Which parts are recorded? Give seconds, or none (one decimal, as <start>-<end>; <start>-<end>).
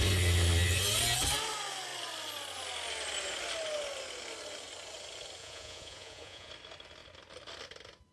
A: 0.0-5.4; 6.5-8.1